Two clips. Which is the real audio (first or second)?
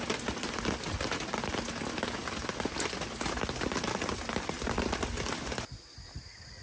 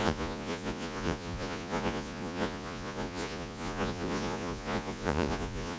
first